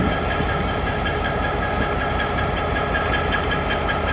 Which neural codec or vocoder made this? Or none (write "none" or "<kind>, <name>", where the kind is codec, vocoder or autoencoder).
none